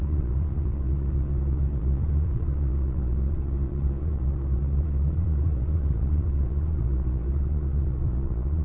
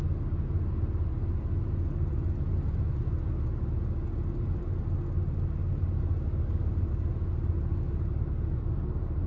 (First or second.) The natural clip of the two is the second